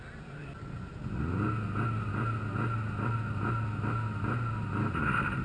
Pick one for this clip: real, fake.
real